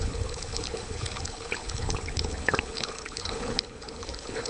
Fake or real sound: fake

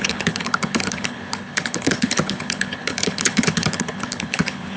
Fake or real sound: fake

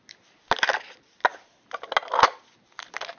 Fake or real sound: real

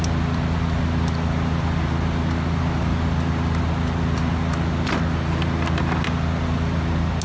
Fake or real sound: real